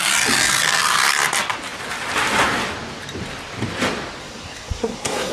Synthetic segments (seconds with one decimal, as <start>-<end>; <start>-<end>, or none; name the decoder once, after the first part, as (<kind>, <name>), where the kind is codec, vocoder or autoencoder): 4.2-5.3 (codec, SNAC)